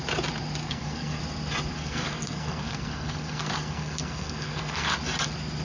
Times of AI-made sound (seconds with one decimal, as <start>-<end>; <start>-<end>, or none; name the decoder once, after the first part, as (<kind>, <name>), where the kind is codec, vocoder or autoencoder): 0.6-1.2 (codec, SNAC); 1.7-5.0